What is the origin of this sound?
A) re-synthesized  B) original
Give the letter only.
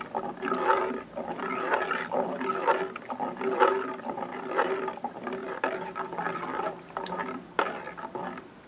B